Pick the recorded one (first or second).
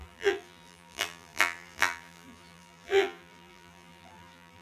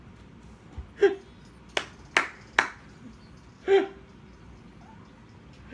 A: second